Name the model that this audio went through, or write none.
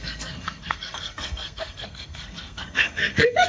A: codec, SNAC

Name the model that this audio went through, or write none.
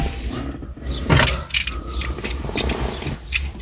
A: none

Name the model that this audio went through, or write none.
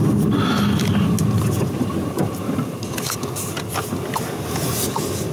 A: none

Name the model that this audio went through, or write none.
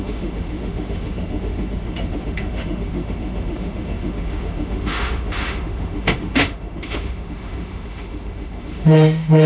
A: autoencoder, DAC-VAE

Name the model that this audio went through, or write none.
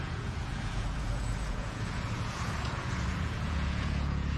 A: vocoder, Vocos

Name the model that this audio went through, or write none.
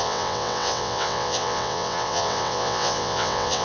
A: vocoder, WaveNeXt